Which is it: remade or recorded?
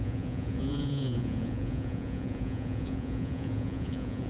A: remade